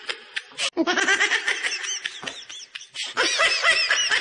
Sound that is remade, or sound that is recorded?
recorded